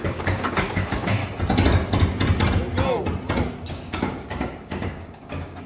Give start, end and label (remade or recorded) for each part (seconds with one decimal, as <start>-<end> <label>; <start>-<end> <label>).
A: 0.0-1.2 remade; 1.2-3.7 recorded; 3.7-5.7 remade